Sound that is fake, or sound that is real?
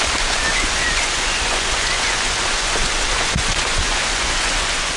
fake